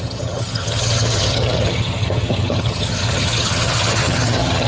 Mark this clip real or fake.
fake